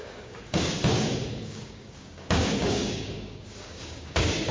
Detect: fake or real fake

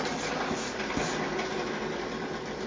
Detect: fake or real real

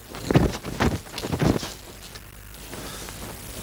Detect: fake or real real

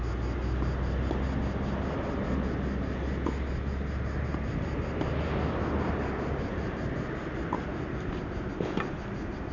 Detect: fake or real real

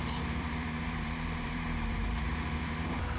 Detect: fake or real fake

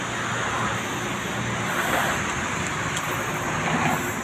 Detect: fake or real real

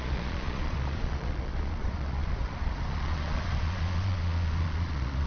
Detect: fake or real fake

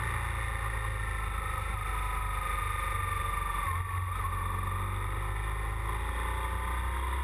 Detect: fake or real real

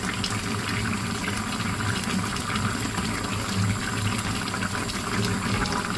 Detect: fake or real real